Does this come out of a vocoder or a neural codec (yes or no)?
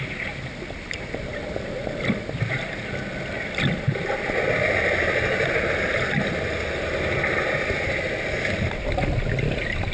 no